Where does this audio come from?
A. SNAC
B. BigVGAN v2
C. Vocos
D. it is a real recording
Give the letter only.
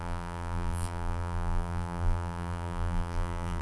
B